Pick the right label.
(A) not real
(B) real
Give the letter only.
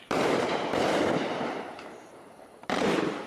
A